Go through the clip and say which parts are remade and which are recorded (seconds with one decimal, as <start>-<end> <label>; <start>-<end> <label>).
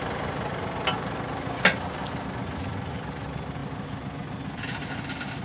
0.0-5.4 recorded